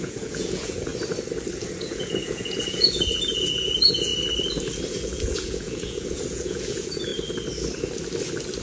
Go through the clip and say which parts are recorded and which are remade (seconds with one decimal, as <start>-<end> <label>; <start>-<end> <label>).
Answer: 0.0-0.9 remade; 0.9-1.8 recorded; 1.8-4.1 remade; 4.1-4.9 recorded; 4.9-7.1 remade; 7.1-8.6 recorded